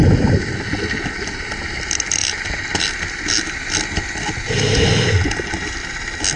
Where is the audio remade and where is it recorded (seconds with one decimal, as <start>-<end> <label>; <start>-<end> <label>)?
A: 0.0-6.4 recorded